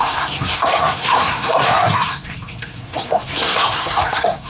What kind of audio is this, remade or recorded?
remade